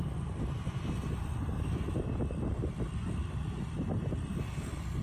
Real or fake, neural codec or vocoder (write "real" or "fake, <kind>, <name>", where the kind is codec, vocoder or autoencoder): real